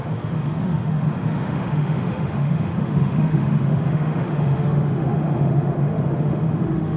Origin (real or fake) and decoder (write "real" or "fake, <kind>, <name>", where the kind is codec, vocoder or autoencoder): fake, autoencoder, DAC-VAE